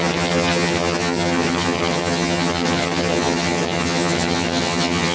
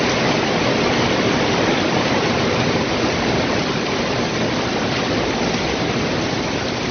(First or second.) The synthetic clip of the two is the first